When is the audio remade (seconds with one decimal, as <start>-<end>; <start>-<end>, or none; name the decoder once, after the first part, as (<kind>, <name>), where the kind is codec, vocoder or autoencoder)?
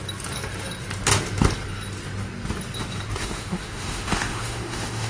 3.2-5.1 (autoencoder, DAC-VAE)